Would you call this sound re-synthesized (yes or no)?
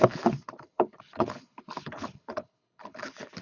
yes